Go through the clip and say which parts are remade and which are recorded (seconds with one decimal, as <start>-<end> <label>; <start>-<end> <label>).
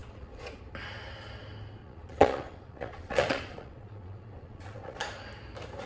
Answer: 0.0-0.6 remade; 0.6-1.8 recorded; 1.8-5.3 remade; 5.3-5.9 recorded